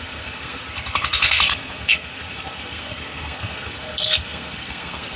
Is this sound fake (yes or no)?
yes